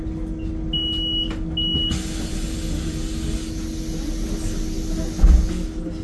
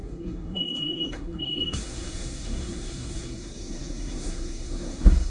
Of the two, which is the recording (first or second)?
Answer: first